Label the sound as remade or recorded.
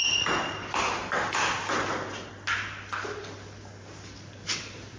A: recorded